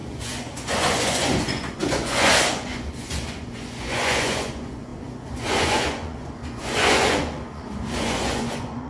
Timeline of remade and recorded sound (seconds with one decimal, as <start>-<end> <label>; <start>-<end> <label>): 0.0-8.9 remade

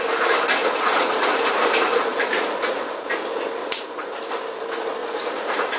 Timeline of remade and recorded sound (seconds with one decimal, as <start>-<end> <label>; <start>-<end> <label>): 0.0-0.6 recorded; 0.6-3.1 remade; 3.1-3.6 recorded; 3.6-4.3 remade; 4.3-5.0 recorded; 5.0-5.8 remade

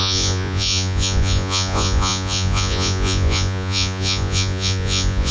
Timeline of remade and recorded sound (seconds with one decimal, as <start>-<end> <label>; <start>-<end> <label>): 0.0-5.3 remade

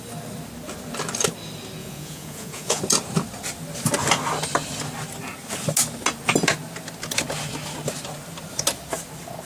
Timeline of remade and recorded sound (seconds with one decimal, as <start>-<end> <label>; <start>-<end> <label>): 0.0-1.8 recorded; 1.8-2.8 remade; 2.8-9.4 recorded

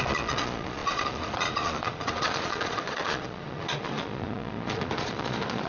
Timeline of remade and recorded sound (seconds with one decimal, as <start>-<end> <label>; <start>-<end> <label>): 0.0-5.7 remade

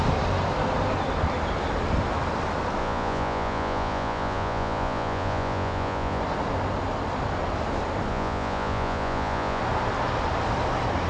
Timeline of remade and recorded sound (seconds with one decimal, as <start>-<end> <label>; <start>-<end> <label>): 0.0-2.8 recorded; 2.8-6.2 remade; 6.2-8.1 recorded; 8.1-9.6 remade; 9.6-11.1 recorded

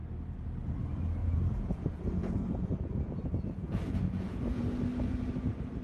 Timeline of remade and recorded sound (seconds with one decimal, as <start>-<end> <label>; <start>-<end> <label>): 0.0-1.2 recorded; 1.2-4.6 remade; 4.6-5.8 recorded

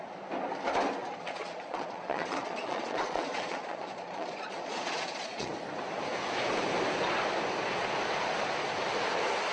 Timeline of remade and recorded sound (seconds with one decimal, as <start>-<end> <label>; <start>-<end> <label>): 0.0-1.0 recorded; 1.0-5.5 remade; 5.5-9.5 recorded